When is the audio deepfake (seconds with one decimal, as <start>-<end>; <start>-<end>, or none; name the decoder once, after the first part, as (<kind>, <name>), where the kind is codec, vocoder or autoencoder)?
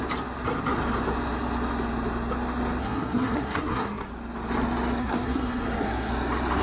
2.8-4.1 (codec, SNAC); 5.0-6.1